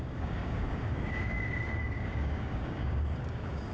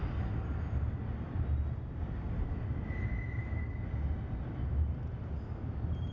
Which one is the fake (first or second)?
first